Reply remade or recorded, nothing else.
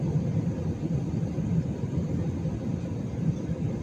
recorded